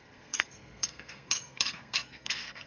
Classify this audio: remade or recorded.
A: remade